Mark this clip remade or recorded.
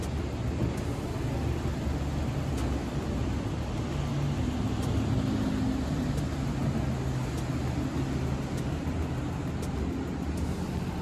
recorded